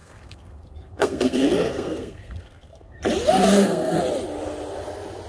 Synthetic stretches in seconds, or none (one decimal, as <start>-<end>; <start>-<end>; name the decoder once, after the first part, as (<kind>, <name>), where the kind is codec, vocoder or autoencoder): 0.0-3.0 (codec, SNAC); 3.4-4.0